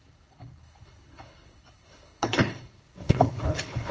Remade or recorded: remade